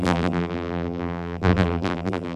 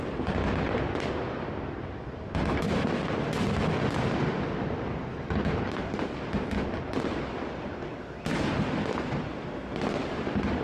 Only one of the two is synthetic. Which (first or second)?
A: first